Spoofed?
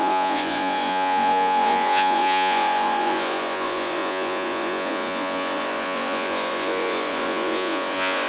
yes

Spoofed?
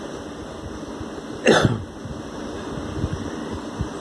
no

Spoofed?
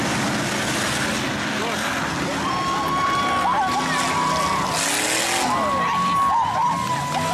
no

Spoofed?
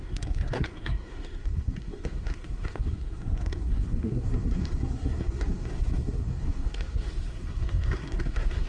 yes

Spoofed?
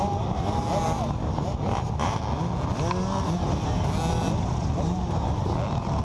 no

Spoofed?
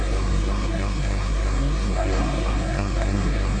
yes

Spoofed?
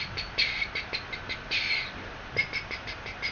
yes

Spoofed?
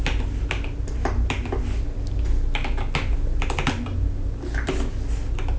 no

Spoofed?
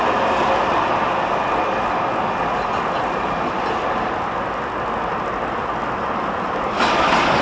no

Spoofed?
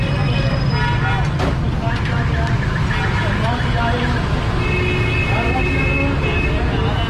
no